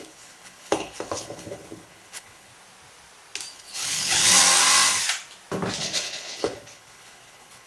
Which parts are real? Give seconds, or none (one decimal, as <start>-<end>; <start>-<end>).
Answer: 2.5-3.5; 4.3-5.8